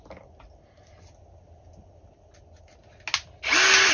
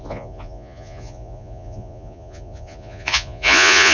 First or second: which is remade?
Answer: second